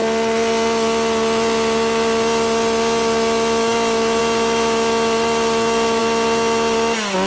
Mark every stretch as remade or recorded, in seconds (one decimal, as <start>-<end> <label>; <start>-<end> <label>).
0.0-7.3 recorded